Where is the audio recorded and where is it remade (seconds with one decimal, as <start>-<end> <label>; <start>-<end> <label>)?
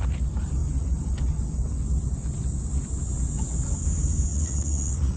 0.0-4.3 recorded; 4.3-5.2 remade